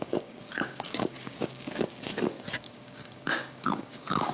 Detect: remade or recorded remade